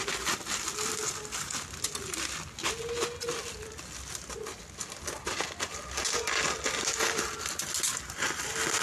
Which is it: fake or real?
real